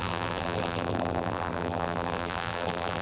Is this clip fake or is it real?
fake